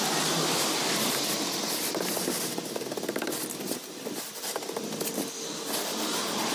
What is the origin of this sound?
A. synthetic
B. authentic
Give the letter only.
B